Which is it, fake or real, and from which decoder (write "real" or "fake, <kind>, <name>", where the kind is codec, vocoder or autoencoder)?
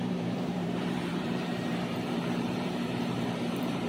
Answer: fake, vocoder, BigVGAN v2